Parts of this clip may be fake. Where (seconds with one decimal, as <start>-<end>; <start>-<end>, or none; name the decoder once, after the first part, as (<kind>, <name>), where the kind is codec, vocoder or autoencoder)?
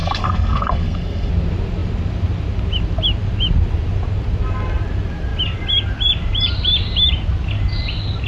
0.0-1.3 (codec, SNAC)